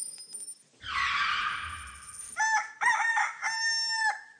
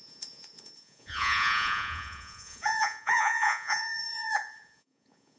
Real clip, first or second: first